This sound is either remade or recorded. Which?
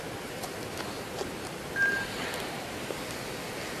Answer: remade